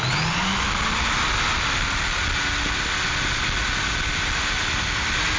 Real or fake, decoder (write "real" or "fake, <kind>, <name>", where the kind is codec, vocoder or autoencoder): real